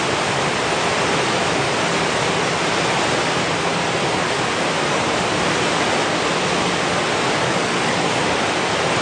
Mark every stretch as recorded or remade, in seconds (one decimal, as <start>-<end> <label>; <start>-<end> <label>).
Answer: 0.0-7.5 recorded; 7.5-8.1 remade; 8.1-9.0 recorded